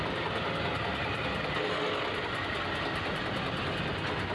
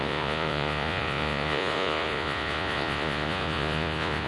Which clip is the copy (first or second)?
second